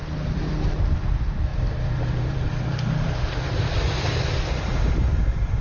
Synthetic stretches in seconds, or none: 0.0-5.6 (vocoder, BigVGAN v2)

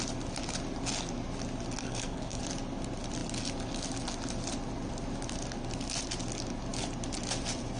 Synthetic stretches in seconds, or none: 1.8-2.4 (codec, SNAC)